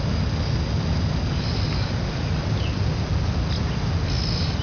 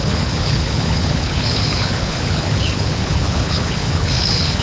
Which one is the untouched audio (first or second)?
first